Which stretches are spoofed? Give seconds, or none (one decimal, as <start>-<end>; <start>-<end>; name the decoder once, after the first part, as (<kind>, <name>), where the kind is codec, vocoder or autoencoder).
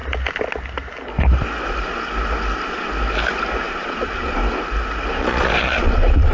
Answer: 3.7-4.4 (vocoder, Vocos); 5.1-6.3